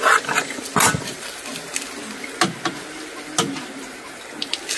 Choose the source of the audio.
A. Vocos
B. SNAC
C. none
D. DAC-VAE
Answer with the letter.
C